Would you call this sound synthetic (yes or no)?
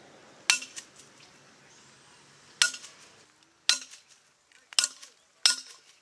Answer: no